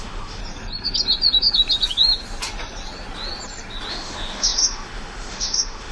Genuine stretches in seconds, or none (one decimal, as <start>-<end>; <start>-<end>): 0.4-3.9